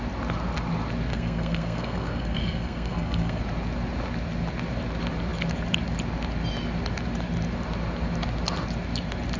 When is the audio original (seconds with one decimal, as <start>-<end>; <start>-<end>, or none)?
0.0-1.1; 3.4-9.4